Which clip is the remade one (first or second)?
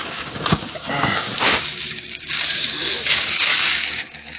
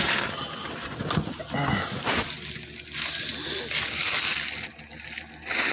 first